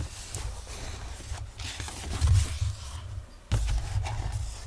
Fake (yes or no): no